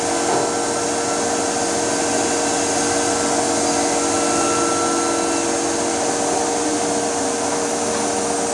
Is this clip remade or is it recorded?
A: recorded